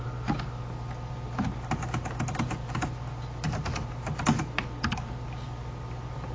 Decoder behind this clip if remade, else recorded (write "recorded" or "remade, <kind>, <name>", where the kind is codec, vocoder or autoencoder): recorded